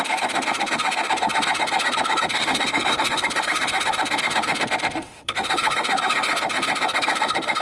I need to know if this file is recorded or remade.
remade